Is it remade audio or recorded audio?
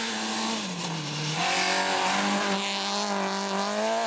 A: recorded